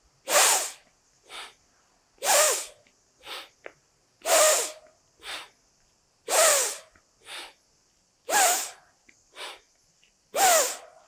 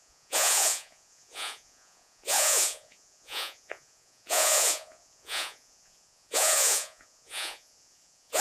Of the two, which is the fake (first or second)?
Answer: second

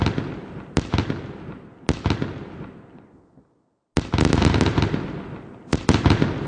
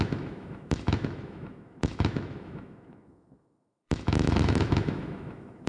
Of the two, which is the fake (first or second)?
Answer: second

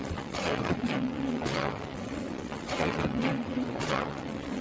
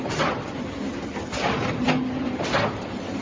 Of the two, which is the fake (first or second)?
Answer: first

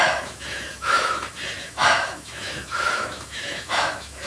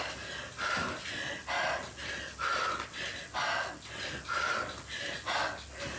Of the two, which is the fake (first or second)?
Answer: first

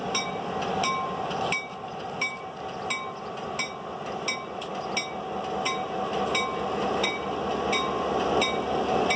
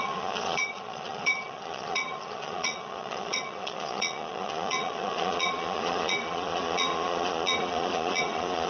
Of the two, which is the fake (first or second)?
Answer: second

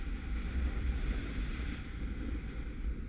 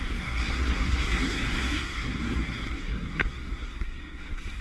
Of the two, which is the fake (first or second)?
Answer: second